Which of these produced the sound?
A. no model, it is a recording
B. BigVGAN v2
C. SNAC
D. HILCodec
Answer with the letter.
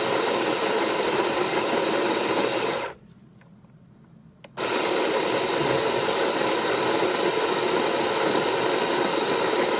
A